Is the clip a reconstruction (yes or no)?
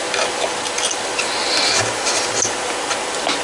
no